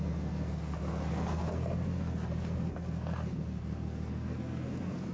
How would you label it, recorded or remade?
remade